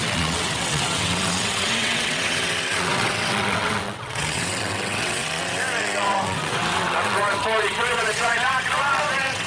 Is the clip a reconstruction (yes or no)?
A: yes